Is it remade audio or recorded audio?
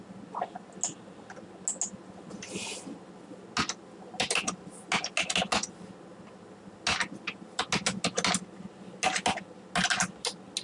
recorded